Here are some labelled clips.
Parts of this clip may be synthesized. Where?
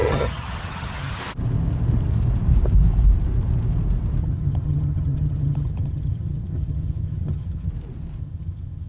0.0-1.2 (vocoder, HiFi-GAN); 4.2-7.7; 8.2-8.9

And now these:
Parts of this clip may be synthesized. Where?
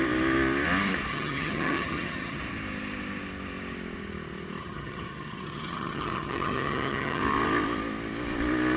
1.1-2.4 (vocoder, HiFi-GAN); 4.6-7.2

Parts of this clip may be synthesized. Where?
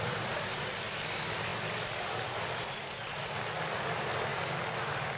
none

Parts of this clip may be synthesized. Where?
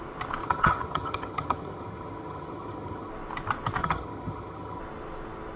0.4-3.1 (vocoder, HiFi-GAN); 3.8-4.8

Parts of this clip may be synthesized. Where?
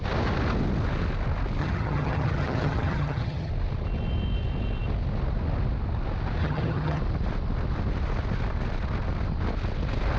1.6-3.5 (vocoder, HiFi-GAN); 6.4-7.0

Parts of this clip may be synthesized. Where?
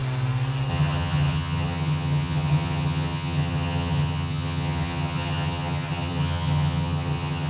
0.7-7.5 (vocoder, HiFi-GAN)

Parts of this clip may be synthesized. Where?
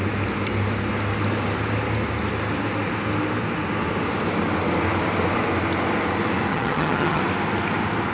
6.5-7.2 (vocoder, HiFi-GAN)